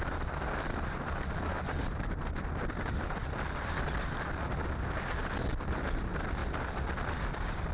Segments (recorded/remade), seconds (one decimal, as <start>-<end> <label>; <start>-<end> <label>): 0.0-7.7 recorded